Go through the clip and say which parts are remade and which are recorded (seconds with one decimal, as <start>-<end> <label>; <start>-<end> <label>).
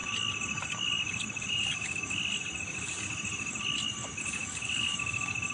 0.0-5.5 recorded